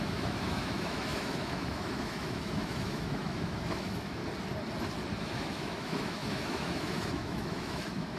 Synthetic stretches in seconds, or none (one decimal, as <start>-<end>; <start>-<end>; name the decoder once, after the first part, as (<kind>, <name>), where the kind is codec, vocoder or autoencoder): 0.0-4.2 (autoencoder, DAC-VAE); 5.2-8.2